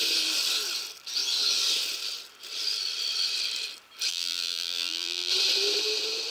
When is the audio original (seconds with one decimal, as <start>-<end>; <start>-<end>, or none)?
0.0-4.1; 5.3-6.3